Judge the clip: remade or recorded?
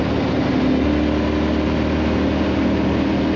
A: recorded